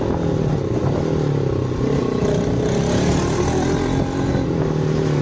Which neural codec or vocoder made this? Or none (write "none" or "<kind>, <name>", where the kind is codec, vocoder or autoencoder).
none